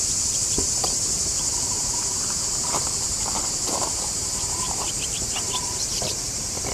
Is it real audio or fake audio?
fake